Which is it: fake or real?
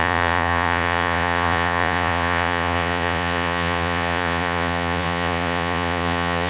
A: fake